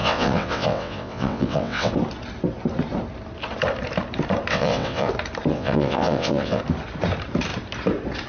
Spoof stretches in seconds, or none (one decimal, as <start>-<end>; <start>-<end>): 0.0-1.9; 4.5-5.1; 5.5-6.6